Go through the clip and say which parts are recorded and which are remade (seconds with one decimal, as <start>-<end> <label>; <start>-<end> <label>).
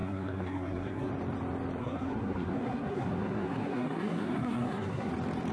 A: 0.0-1.1 remade; 1.1-1.8 recorded; 1.8-5.1 remade; 5.1-5.5 recorded